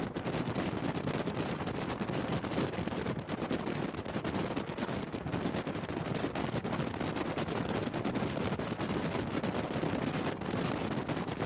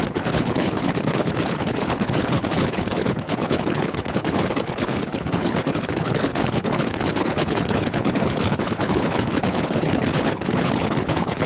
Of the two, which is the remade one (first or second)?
second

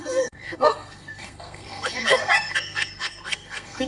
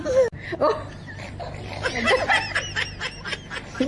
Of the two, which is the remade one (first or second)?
first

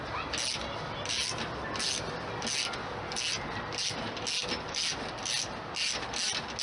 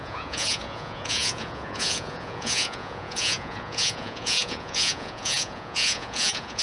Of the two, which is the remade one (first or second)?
second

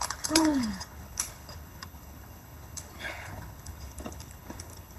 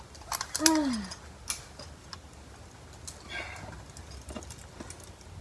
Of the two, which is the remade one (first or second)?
first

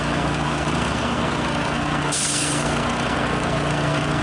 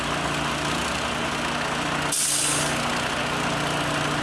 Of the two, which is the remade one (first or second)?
first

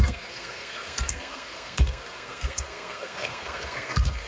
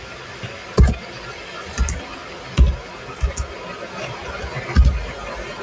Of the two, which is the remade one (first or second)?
first